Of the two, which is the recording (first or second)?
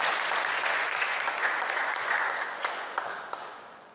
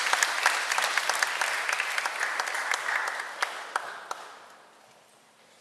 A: second